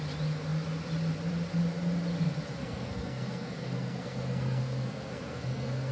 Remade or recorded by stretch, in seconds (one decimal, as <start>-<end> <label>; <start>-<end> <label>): 0.0-2.6 recorded; 2.6-5.9 remade